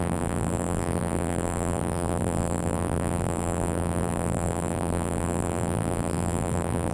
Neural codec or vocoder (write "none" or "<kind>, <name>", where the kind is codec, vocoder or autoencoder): vocoder, BigVGAN v2